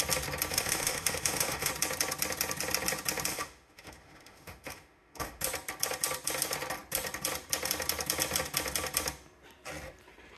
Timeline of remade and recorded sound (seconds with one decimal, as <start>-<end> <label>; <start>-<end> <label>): 0.0-0.5 recorded; 0.5-1.7 remade; 1.7-3.3 recorded; 3.3-5.4 remade; 5.4-10.4 recorded